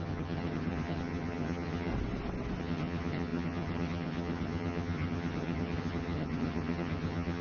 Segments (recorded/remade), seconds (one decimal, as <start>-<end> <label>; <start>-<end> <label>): 0.0-1.9 remade; 1.9-2.6 recorded; 2.6-7.4 remade